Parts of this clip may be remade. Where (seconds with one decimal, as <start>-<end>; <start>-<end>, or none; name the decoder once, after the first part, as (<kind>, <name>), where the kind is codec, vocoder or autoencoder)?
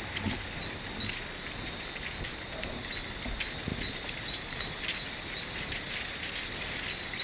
none